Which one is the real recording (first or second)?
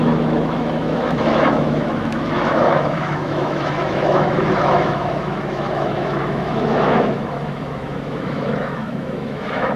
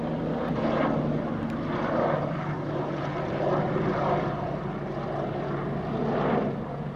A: second